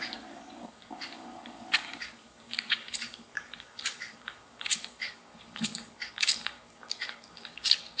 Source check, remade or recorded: remade